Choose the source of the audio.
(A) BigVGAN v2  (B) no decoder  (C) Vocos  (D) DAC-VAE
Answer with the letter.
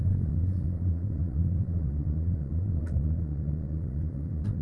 C